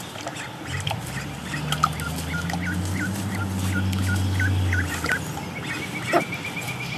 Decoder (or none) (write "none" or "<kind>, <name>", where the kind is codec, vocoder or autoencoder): none